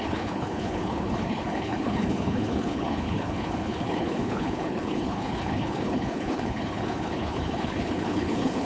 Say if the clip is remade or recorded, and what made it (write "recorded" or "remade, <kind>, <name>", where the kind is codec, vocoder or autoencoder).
remade, codec, HILCodec